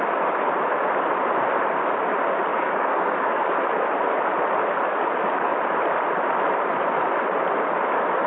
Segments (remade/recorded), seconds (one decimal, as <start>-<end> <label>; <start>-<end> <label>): 0.0-2.5 recorded; 2.5-3.4 remade; 3.4-8.3 recorded